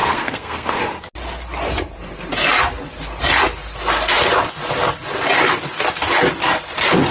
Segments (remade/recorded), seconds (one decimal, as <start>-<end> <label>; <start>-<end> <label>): 0.0-0.8 remade; 0.8-7.1 recorded